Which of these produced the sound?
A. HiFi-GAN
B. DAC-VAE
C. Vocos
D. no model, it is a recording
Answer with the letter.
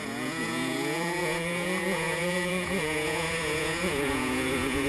C